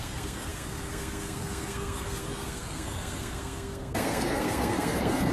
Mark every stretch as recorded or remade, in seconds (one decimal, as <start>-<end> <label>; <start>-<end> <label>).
0.0-5.3 remade